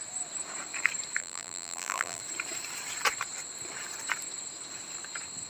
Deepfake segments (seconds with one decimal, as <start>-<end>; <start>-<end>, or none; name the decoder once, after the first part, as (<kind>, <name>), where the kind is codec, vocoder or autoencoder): 1.2-2.2 (vocoder, BigVGAN v2)